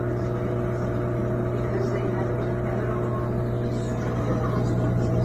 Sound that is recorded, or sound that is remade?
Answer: recorded